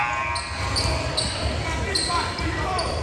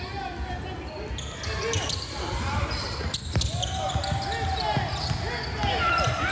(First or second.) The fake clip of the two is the first